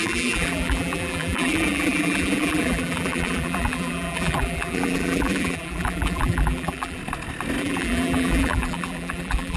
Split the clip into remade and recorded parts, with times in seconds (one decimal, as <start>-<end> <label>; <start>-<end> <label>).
0.0-7.0 remade; 7.0-7.6 recorded; 7.6-9.6 remade